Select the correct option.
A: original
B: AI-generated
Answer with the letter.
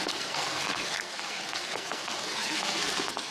B